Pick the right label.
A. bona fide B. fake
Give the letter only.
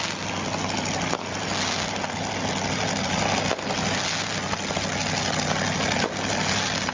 A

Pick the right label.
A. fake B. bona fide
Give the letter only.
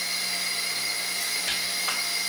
B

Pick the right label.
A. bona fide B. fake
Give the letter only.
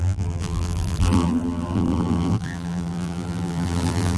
B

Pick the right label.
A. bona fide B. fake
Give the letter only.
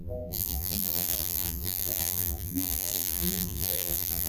B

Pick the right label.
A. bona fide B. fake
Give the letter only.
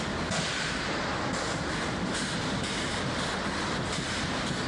A